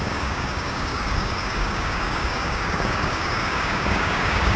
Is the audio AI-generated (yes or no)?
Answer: yes